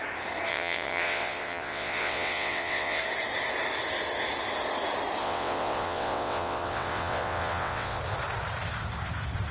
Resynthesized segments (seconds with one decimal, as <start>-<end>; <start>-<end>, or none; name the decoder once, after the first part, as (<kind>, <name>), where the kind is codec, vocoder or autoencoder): 0.5-3.0 (vocoder, WaveNeXt); 5.2-8.0